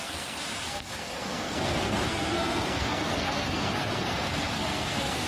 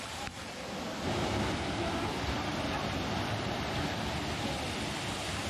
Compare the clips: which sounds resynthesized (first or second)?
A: first